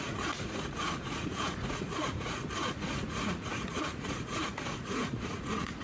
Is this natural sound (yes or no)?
no